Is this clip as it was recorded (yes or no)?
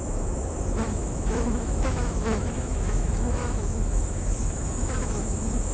no